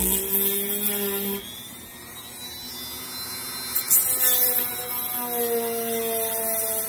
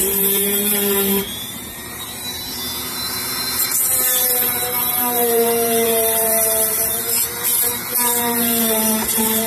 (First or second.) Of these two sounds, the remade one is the second